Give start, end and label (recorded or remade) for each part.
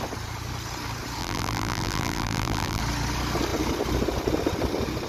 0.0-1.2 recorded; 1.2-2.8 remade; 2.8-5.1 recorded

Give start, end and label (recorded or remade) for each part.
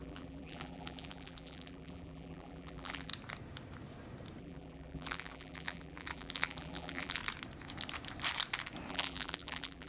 0.0-3.1 remade; 3.1-4.4 recorded; 4.4-7.2 remade; 7.2-8.9 recorded; 8.9-9.9 remade